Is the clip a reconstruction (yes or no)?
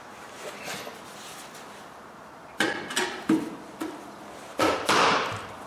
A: yes